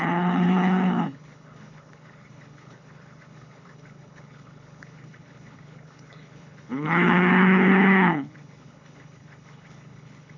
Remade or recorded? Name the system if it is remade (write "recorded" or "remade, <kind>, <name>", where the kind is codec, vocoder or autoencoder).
remade, codec, HILCodec